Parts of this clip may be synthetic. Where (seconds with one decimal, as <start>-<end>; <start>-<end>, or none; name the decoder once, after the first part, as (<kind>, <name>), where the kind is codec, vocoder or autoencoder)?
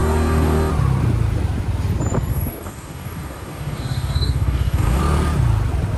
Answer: 0.0-0.7 (codec, DAC); 2.3-5.0